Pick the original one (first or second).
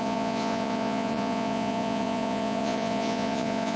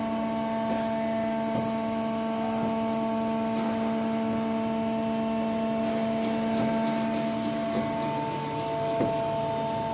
second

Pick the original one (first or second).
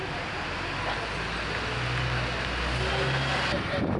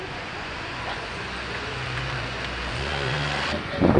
first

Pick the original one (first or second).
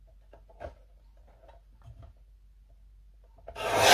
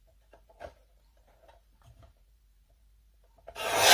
first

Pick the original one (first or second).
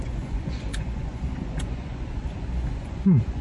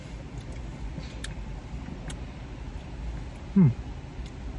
second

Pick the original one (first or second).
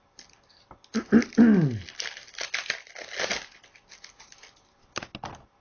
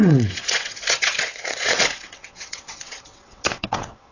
first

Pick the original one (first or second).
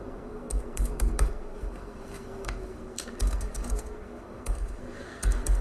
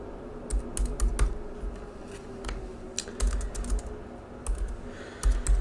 second